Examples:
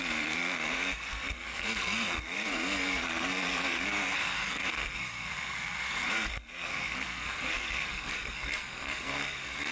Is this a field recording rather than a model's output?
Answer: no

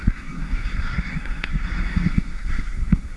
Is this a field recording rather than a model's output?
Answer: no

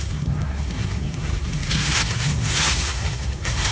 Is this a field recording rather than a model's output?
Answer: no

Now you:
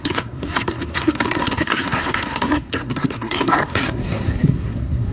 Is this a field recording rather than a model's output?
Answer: no